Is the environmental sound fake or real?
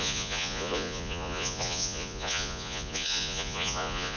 fake